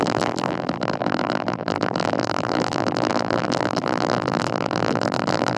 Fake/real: fake